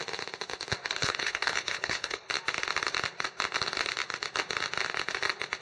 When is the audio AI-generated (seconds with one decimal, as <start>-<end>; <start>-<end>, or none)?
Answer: 1.0-2.3